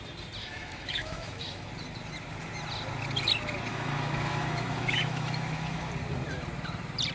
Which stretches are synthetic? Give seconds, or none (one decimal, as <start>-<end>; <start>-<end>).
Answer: 0.4-1.7; 3.7-5.9